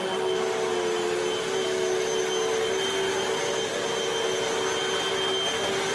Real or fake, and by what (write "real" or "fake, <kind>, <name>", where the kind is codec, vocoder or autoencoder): real